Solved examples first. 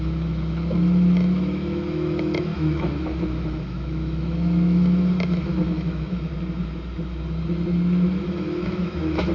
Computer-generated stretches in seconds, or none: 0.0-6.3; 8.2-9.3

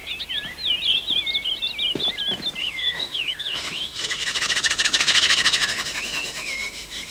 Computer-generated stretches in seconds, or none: 2.6-7.1

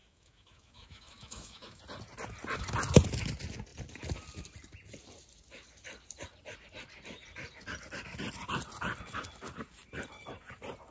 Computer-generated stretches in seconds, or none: 0.0-1.8

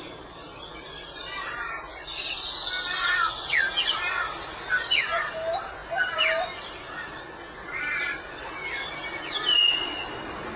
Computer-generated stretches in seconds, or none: none

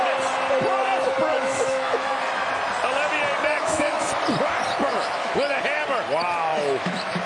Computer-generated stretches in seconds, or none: 1.3-2.2; 3.5-4.1; 4.9-5.6; 6.5-7.3

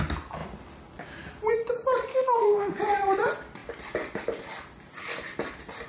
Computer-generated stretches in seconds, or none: 2.1-2.8

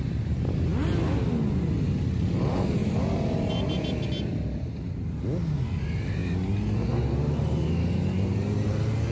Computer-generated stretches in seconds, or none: none

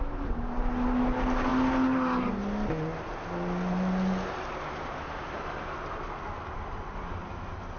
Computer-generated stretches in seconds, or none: none